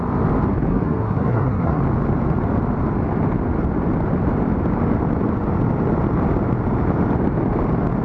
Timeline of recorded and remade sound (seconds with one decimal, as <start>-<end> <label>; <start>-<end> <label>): 0.0-0.7 recorded; 0.7-1.8 remade; 1.8-8.0 recorded